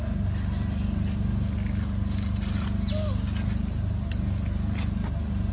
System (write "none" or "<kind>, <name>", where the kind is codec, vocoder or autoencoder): none